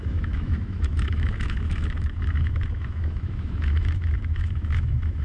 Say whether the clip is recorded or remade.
remade